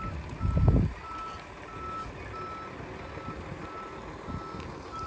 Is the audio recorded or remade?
recorded